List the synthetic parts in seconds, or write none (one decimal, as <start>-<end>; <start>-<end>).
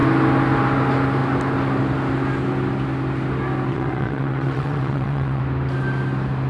3.7-5.4